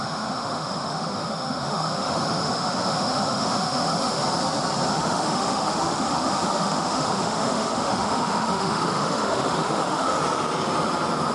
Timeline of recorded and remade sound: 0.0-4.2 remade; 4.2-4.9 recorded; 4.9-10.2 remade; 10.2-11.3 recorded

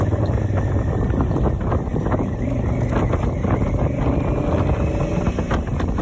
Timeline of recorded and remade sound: 0.0-6.0 recorded

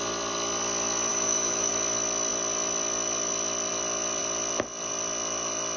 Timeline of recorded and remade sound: 0.0-1.1 recorded; 1.1-1.7 remade; 1.7-5.8 recorded

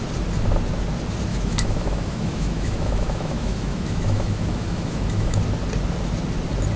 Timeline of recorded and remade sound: 0.0-1.3 recorded; 1.3-5.4 remade; 5.4-6.8 recorded

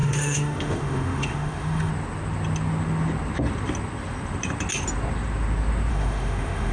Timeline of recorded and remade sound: 0.0-1.9 remade; 1.9-5.9 recorded; 5.9-6.7 remade

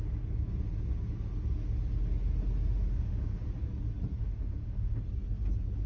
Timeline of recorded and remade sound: 0.0-2.9 recorded; 2.9-3.4 remade; 3.4-4.2 recorded; 4.2-5.0 remade; 5.0-5.9 recorded